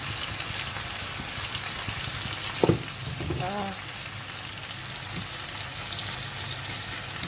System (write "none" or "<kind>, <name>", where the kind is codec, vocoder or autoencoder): none